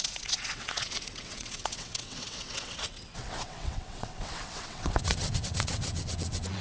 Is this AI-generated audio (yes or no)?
yes